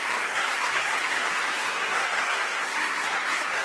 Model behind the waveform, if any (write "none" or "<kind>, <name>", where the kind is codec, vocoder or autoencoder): codec, SNAC